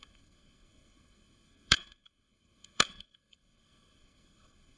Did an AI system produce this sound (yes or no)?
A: yes